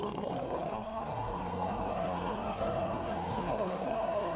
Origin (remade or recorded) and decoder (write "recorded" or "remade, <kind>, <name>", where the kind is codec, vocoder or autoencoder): remade, codec, SNAC